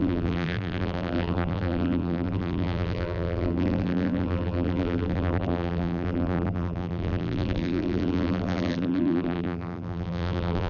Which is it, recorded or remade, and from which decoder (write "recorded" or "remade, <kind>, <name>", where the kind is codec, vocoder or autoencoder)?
remade, vocoder, BigVGAN v2